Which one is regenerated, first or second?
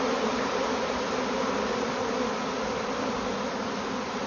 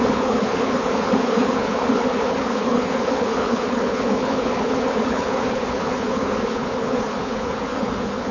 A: second